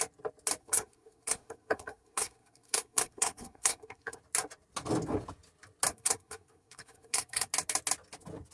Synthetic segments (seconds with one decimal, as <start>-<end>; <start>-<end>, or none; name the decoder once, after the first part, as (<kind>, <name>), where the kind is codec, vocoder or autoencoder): 0.6-4.2 (codec, SNAC); 5.9-7.5